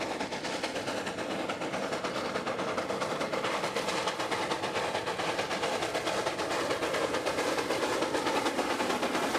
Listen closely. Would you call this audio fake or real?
real